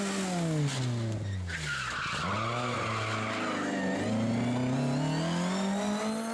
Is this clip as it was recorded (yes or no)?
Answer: yes